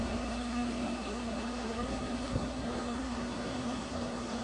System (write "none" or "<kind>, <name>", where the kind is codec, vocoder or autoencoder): codec, SNAC